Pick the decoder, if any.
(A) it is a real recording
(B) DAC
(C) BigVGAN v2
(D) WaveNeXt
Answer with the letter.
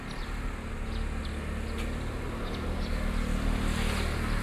A